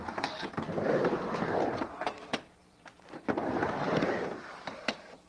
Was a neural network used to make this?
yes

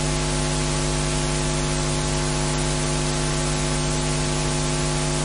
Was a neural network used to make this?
no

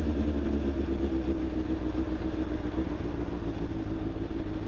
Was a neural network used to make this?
no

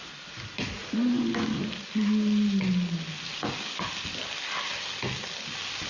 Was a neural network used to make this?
no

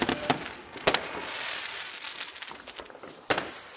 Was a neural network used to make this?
no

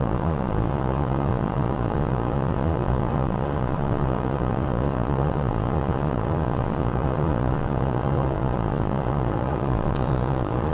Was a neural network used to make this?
yes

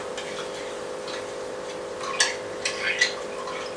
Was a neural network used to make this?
no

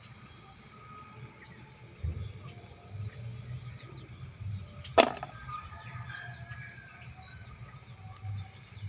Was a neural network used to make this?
no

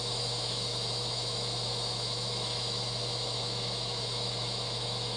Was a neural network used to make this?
yes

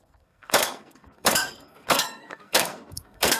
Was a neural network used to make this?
yes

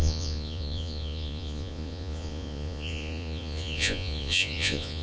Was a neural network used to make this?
yes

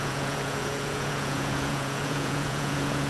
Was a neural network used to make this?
yes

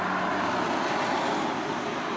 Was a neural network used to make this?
no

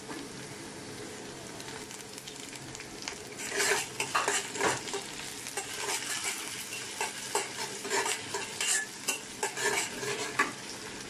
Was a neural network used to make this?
no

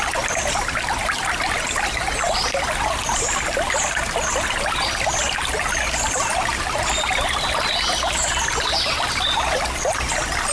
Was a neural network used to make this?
no